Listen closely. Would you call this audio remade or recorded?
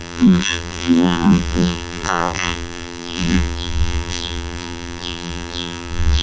remade